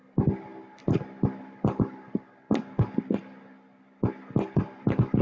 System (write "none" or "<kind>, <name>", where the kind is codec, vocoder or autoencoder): none